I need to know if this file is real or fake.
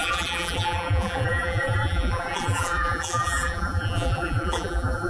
fake